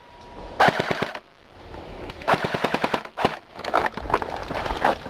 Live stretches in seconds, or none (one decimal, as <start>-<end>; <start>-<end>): 0.0-1.3; 4.0-5.1